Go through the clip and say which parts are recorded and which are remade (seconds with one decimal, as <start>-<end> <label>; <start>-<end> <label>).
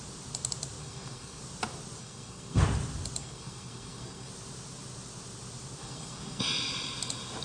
0.0-0.8 recorded; 0.8-1.4 remade; 1.4-2.0 recorded; 2.0-2.6 remade; 2.6-3.2 recorded; 3.2-4.3 remade; 4.3-5.8 recorded; 5.8-6.4 remade; 6.4-7.4 recorded